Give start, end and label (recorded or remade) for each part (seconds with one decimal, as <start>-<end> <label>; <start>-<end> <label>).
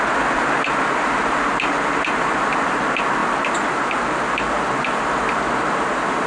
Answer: 0.0-6.3 recorded